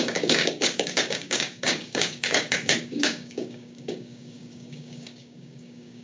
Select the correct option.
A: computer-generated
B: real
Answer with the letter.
A